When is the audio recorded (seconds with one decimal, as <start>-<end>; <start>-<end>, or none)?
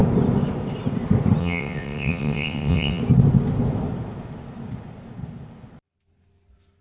0.0-1.4; 3.0-6.8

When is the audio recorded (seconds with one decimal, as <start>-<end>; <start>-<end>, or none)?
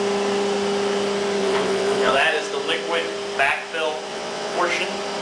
0.0-1.4; 2.1-4.1; 4.6-5.2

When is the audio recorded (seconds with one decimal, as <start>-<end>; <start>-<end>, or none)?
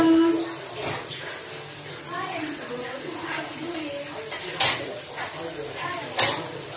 0.0-2.1; 3.1-6.8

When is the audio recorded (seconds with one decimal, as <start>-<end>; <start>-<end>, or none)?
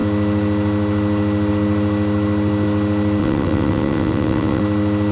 0.0-3.2; 4.6-5.1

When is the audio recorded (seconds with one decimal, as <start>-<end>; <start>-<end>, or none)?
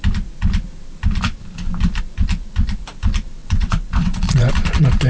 0.0-3.4; 4.5-5.1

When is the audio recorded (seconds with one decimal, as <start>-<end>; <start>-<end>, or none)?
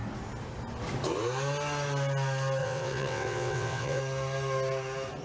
0.0-2.6; 4.0-5.2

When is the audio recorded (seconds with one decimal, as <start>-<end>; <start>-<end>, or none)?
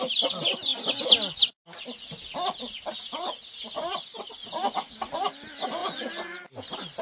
0.0-7.0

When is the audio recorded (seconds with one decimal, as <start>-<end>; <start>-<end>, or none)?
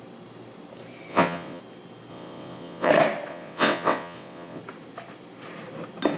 0.0-1.1; 1.6-2.1; 2.9-3.3; 4.6-6.2